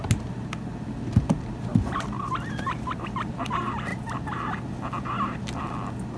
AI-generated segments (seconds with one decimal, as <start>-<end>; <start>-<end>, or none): 1.7-3.3